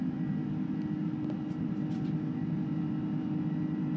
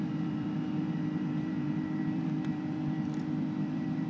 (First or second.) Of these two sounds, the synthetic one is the second